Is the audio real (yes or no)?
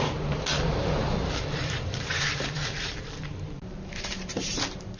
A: no